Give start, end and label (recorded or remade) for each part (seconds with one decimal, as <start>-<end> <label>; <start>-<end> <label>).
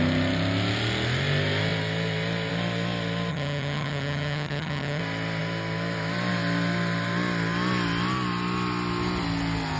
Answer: 0.0-3.3 recorded; 3.3-5.0 remade; 5.0-9.8 recorded